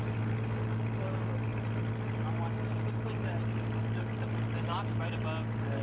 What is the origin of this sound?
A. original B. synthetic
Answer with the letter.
A